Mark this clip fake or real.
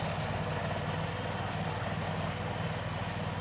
real